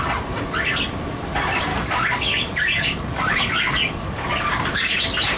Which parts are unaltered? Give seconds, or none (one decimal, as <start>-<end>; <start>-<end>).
0.0-1.7; 4.9-5.4